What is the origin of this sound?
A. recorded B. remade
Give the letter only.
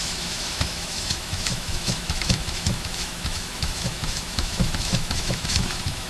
B